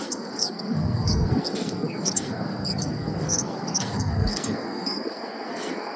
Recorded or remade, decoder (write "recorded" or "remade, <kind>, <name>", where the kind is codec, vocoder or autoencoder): remade, codec, SNAC